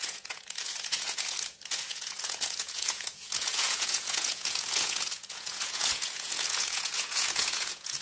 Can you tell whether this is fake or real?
fake